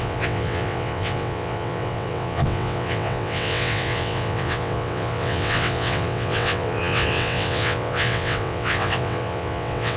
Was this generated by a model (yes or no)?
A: yes